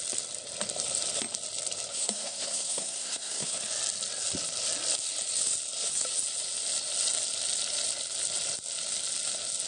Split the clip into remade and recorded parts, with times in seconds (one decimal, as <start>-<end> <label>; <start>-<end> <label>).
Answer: 0.0-1.9 recorded; 1.9-3.6 remade; 3.6-9.7 recorded